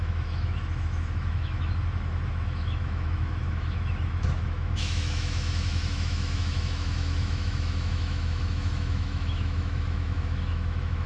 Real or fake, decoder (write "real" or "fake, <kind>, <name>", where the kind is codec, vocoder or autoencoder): fake, autoencoder, DAC-VAE